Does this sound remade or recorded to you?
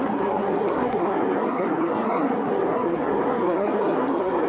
remade